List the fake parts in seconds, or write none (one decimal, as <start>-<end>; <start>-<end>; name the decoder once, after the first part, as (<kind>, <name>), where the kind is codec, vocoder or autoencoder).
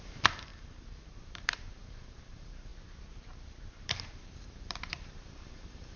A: 0.0-2.7 (vocoder, BigVGAN v2); 3.8-6.0